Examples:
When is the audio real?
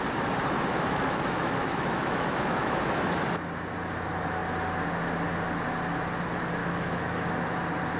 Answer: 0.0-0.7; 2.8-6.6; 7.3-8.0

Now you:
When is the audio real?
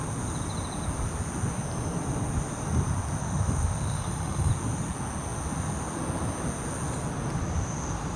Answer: 0.0-3.2; 4.5-8.2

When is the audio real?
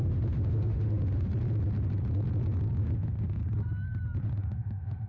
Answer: 1.3-2.8; 3.4-4.2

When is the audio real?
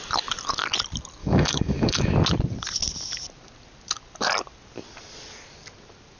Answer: 0.0-1.2; 2.1-6.2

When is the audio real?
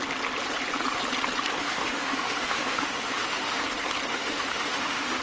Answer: 0.0-1.6; 3.6-4.1